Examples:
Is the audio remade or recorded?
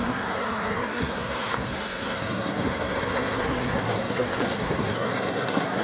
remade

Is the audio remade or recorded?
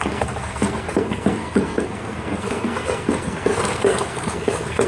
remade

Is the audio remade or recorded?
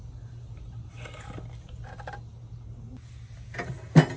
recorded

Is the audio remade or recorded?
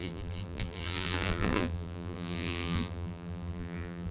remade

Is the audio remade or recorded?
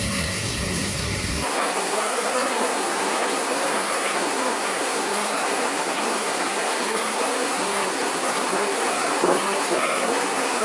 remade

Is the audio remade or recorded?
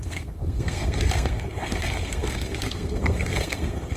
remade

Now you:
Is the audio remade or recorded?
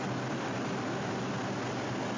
recorded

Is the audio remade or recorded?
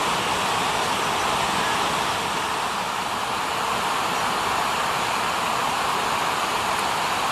recorded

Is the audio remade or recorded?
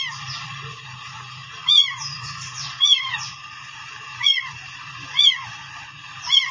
remade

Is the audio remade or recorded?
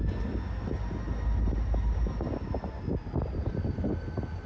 recorded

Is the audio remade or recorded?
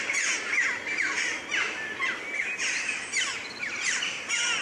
recorded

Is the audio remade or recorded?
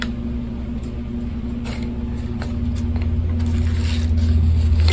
recorded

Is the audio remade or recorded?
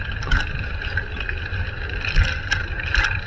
recorded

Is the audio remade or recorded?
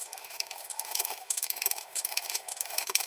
remade